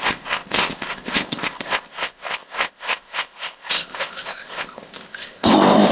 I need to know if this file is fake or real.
fake